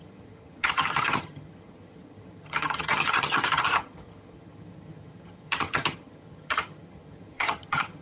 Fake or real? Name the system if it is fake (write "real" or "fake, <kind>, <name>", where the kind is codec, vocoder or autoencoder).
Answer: fake, vocoder, HiFi-GAN